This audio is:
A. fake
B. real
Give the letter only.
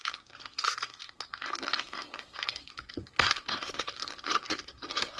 A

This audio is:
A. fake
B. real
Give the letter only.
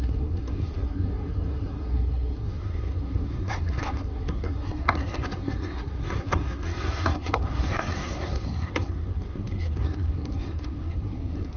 A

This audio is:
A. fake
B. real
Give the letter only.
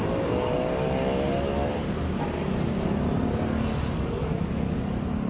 B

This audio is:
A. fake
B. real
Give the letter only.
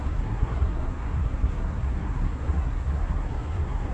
A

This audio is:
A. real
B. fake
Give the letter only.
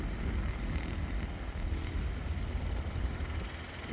A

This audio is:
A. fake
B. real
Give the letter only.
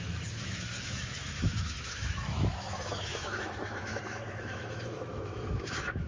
A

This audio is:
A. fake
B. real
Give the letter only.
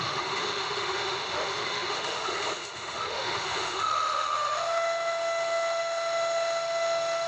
A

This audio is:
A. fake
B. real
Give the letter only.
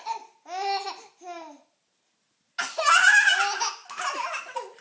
B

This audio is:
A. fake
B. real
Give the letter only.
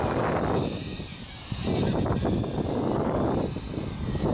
B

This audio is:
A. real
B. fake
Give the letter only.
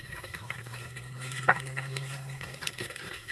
B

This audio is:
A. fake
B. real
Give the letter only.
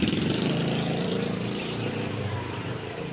A